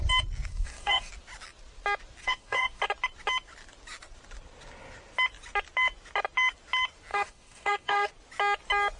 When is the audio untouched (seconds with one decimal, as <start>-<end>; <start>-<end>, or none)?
0.0-0.5; 1.1-2.2; 2.8-7.1; 8.1-9.0